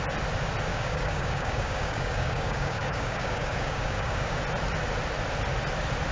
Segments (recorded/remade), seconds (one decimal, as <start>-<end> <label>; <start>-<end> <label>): 0.0-0.7 recorded; 0.7-4.4 remade; 4.4-6.1 recorded